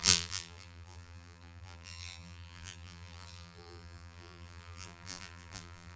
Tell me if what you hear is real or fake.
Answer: fake